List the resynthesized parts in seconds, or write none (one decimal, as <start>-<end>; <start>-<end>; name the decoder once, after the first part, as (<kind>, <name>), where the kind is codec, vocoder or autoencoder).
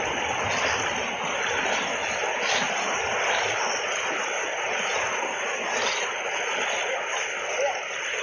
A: none